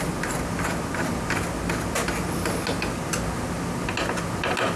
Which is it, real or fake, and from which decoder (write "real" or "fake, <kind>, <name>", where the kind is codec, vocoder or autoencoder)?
real